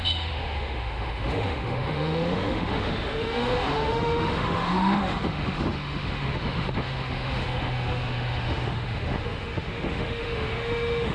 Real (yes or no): no